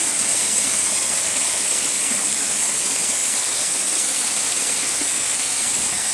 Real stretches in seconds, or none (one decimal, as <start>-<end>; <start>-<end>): none